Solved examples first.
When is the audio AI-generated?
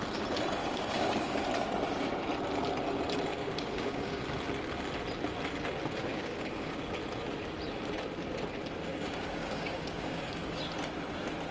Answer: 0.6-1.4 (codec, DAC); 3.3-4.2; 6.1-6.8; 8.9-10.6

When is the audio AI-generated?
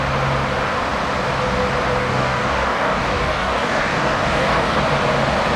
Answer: 2.0-4.8 (codec, DAC)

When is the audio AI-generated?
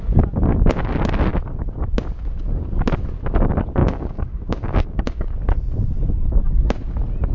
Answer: 3.8-5.3 (codec, DAC)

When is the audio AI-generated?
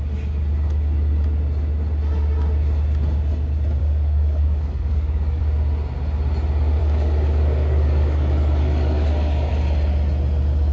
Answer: 3.8-5.4 (codec, DAC); 6.8-9.5